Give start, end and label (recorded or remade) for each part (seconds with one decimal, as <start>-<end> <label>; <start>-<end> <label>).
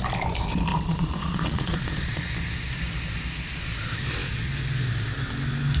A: 0.0-0.7 recorded; 0.7-2.2 remade; 2.2-5.8 recorded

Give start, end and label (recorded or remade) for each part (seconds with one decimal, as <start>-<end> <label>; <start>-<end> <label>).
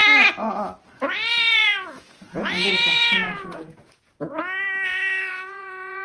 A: 0.0-0.9 recorded; 0.9-4.4 remade; 4.4-5.3 recorded; 5.3-6.0 remade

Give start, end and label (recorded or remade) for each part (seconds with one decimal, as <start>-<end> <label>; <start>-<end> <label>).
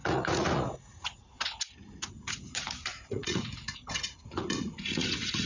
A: 0.0-1.2 remade; 1.2-1.9 recorded; 1.9-5.5 remade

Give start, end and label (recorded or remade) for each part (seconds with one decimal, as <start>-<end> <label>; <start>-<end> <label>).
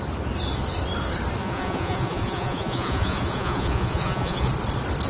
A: 0.0-1.4 recorded; 1.4-4.5 remade; 4.5-5.1 recorded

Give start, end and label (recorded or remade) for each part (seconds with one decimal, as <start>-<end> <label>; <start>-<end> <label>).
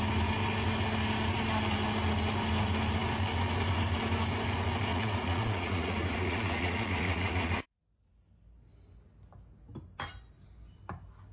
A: 0.0-4.9 recorded; 4.9-7.8 remade; 7.8-11.3 recorded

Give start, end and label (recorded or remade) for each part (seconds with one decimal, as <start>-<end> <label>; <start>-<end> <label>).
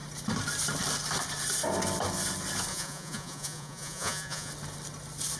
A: 0.0-2.7 recorded; 2.7-4.5 remade; 4.5-5.4 recorded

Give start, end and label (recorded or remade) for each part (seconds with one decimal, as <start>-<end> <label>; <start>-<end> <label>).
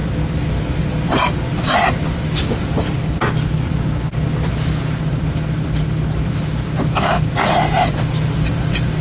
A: 0.0-9.0 recorded